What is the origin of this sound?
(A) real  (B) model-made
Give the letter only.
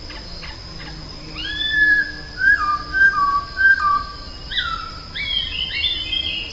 A